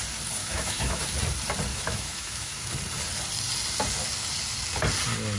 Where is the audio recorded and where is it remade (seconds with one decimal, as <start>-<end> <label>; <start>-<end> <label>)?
0.0-0.4 recorded; 0.4-1.0 remade; 1.0-1.7 recorded; 1.7-2.7 remade; 2.7-5.4 recorded